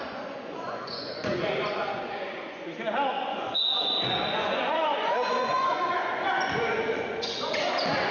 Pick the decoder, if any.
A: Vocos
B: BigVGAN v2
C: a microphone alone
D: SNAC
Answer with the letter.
A